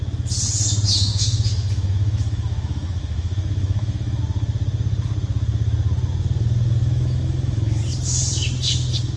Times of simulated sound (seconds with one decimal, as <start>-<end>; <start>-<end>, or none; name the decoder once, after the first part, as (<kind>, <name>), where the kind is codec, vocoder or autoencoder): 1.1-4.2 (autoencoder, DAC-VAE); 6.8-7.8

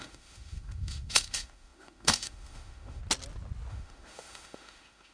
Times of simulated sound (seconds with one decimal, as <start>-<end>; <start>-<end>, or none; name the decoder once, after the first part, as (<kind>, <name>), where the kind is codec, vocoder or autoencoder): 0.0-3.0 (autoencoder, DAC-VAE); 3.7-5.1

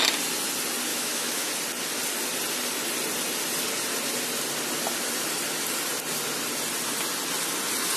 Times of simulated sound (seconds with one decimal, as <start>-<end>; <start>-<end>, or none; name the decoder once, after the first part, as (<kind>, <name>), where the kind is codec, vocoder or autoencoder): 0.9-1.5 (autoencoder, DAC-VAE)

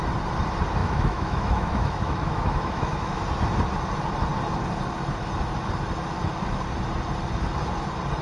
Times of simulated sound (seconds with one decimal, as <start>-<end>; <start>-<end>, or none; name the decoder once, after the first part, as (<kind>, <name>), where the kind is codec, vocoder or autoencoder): 0.8-3.2 (autoencoder, DAC-VAE)